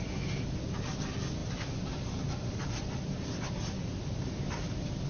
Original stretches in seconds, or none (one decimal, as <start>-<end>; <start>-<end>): 0.0-5.1